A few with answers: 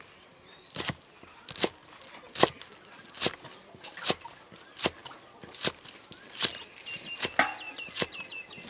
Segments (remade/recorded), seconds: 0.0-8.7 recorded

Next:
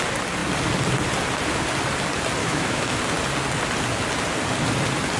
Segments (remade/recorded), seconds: 0.0-2.4 recorded; 2.4-3.0 remade; 3.0-5.2 recorded